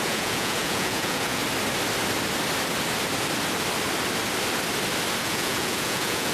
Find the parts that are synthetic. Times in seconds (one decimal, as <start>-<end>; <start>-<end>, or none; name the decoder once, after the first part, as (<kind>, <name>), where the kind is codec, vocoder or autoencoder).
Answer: 0.0-1.4 (vocoder, Vocos); 5.2-6.3